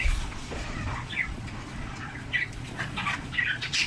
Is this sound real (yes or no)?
no